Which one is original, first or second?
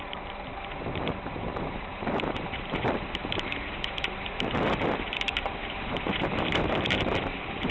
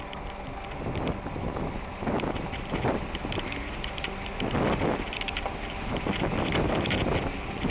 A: second